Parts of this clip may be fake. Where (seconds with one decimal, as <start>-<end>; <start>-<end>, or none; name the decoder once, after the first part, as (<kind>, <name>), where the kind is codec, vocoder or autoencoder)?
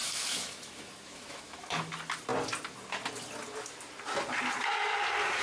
0.0-1.9 (autoencoder, DAC-VAE)